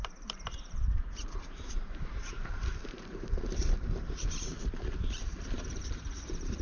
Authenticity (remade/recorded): remade